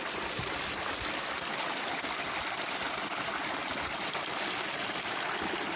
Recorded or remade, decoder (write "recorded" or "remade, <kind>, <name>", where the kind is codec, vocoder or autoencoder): recorded